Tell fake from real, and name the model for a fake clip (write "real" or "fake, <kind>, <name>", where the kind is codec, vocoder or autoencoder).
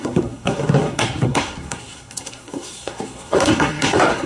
fake, codec, SNAC